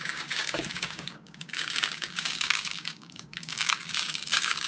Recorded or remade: remade